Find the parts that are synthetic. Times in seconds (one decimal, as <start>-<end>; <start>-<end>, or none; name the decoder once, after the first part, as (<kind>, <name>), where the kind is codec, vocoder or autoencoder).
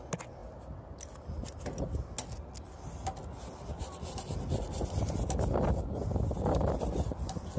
none